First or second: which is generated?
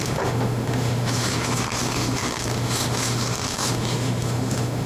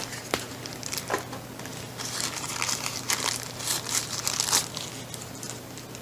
first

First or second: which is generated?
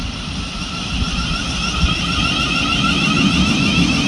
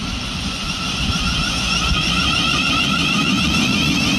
second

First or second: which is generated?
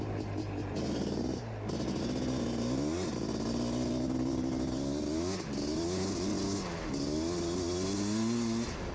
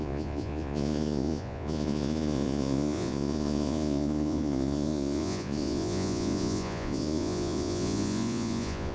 second